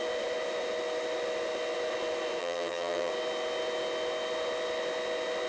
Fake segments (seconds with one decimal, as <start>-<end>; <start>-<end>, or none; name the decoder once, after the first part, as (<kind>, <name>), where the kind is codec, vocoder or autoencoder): 2.4-3.1 (vocoder, HiFi-GAN)